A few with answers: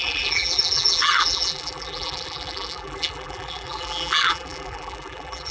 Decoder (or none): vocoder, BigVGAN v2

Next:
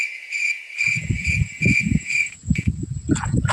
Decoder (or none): vocoder, Vocos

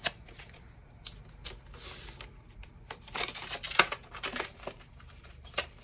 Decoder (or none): vocoder, BigVGAN v2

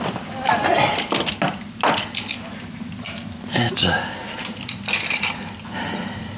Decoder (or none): none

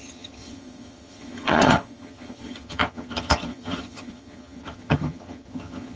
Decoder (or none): vocoder, HiFi-GAN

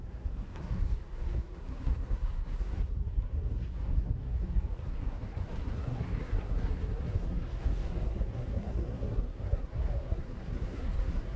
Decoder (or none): codec, SNAC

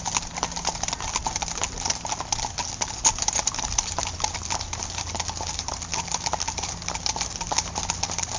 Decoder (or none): none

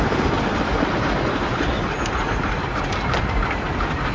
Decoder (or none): none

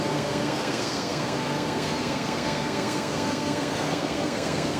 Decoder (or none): codec, SNAC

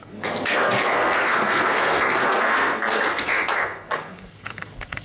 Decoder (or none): codec, SNAC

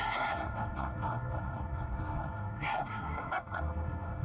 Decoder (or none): codec, SNAC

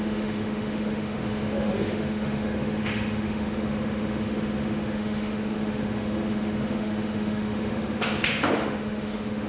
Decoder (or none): autoencoder, DAC-VAE